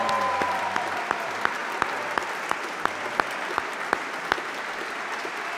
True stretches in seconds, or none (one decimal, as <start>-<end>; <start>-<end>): 0.0-5.6